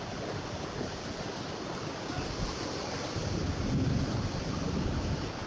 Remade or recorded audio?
recorded